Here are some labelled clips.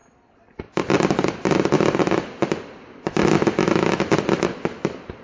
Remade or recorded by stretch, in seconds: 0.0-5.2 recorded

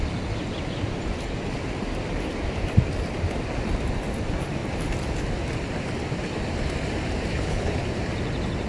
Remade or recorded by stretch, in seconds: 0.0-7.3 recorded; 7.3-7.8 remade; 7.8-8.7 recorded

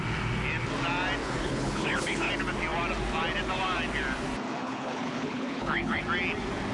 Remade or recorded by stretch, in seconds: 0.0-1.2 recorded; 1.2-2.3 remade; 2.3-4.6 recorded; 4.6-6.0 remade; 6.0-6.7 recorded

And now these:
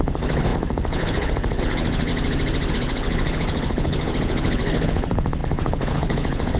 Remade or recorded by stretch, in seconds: 0.0-2.1 remade; 2.1-2.7 recorded; 2.7-6.6 remade